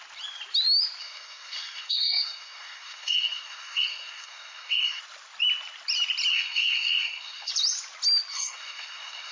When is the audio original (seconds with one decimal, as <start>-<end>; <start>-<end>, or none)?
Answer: 0.0-1.0; 5.0-6.3; 7.5-8.3